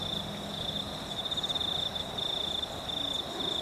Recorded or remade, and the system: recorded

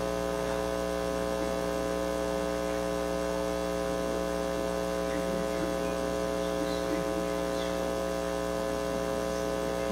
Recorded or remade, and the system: recorded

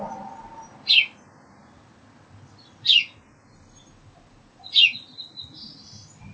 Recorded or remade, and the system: recorded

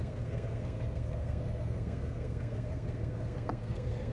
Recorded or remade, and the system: remade, codec, SNAC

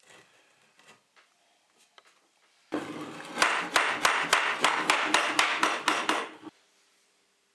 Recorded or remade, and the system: recorded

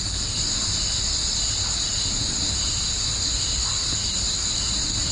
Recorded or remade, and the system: recorded